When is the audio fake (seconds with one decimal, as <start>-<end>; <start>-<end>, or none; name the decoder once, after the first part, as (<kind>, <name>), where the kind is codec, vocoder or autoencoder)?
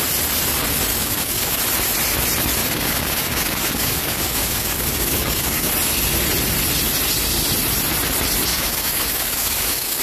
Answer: 0.9-1.6 (codec, DAC); 2.6-5.7; 8.5-10.0